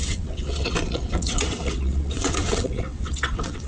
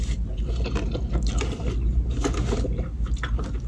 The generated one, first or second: first